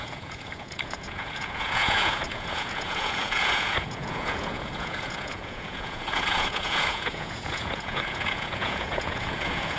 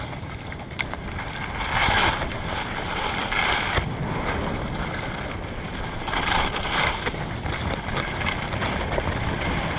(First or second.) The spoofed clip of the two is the first